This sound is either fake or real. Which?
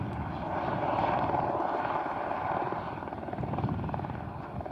real